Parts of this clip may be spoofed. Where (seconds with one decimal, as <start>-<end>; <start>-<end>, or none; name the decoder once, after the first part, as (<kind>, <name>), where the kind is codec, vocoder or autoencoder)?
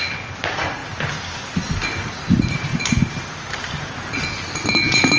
none